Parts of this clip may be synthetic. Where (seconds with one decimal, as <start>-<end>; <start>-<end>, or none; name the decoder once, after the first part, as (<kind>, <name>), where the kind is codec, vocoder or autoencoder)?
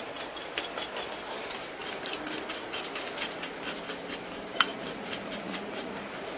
4.7-6.0 (vocoder, Vocos)